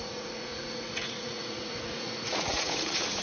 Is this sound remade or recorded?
remade